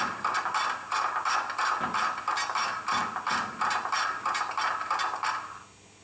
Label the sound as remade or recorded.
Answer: recorded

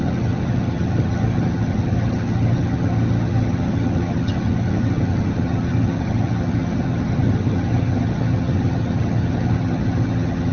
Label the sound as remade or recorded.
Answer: remade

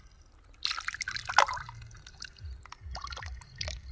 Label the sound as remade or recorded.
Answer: recorded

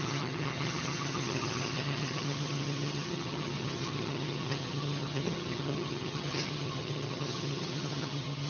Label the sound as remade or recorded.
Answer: remade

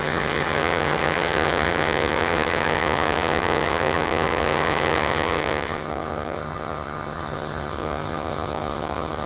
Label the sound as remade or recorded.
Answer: remade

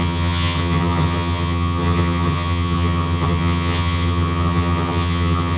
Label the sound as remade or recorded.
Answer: remade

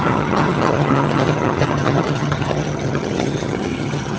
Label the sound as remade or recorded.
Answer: remade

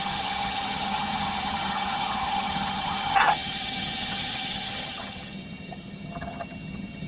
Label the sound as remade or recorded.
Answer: remade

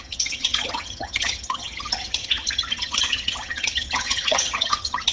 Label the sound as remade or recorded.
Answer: remade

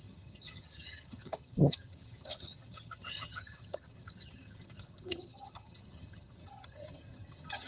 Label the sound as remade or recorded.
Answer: remade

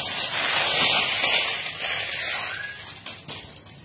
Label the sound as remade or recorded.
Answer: recorded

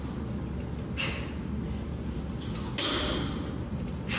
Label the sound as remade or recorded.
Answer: recorded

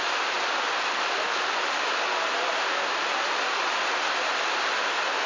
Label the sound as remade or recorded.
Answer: recorded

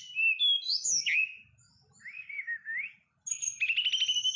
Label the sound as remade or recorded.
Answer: recorded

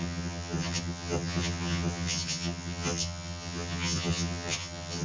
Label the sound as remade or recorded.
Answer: remade